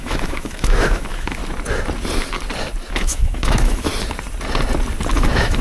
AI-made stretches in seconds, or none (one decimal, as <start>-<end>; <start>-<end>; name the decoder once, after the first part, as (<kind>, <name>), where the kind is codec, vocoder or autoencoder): 0.0-1.4 (autoencoder, DAC-VAE); 2.9-3.9; 5.1-5.6